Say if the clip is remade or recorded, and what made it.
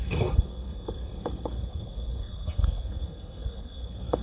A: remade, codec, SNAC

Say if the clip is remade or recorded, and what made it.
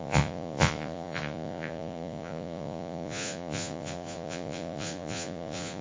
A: remade, vocoder, Vocos